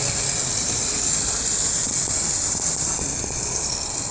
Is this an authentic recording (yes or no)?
yes